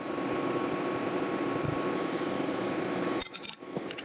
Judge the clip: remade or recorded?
recorded